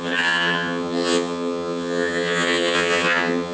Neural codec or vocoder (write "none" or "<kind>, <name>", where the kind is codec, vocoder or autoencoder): vocoder, HiFi-GAN